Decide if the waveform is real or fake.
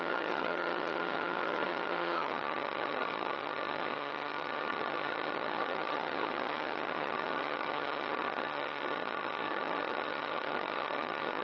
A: fake